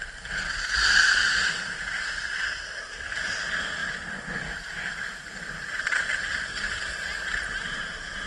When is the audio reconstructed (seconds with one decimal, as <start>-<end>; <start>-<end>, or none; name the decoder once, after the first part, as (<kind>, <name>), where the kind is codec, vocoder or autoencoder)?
none

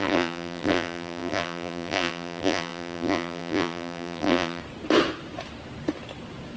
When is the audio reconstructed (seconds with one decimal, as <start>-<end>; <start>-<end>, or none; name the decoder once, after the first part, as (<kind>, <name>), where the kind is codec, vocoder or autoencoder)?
0.0-4.6 (vocoder, BigVGAN v2)

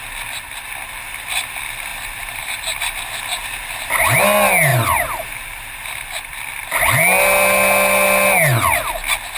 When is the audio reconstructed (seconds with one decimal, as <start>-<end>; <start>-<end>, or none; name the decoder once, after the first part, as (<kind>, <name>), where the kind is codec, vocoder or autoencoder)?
1.9-3.0 (vocoder, BigVGAN v2); 4.7-6.5

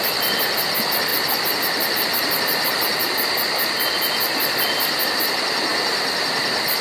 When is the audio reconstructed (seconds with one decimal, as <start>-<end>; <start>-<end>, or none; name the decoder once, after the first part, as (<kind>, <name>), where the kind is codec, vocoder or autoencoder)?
5.7-6.2 (vocoder, BigVGAN v2)